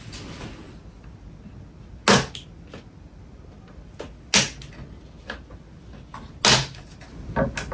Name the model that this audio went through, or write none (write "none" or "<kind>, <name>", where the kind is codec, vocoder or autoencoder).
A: none